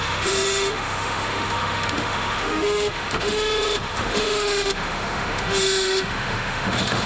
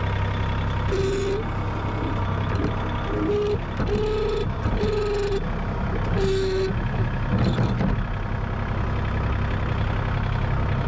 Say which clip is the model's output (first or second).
first